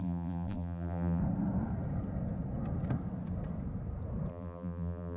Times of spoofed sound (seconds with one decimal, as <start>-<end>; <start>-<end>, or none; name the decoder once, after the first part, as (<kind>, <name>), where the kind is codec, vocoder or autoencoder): 0.0-1.2 (vocoder, BigVGAN v2); 4.3-5.2